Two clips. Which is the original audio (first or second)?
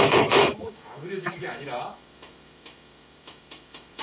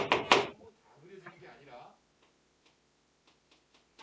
second